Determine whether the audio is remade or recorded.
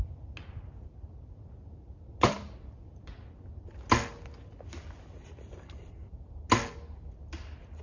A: recorded